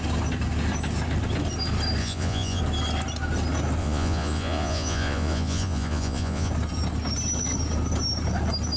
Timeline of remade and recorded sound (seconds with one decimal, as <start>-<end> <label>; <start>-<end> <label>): 0.0-2.0 recorded; 2.0-2.6 remade; 2.6-3.8 recorded; 3.8-6.5 remade; 6.5-8.8 recorded